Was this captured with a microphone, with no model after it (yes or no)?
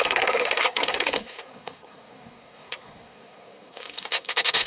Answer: no